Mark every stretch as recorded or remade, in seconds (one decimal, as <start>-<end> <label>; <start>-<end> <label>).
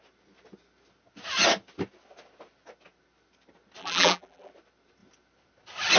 0.0-3.8 recorded; 3.8-4.5 remade; 4.5-6.0 recorded